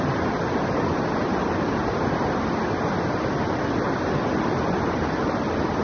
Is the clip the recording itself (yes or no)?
yes